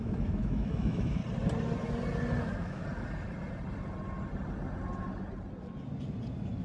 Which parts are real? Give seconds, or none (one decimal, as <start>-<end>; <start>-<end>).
1.2-2.4; 2.8-6.6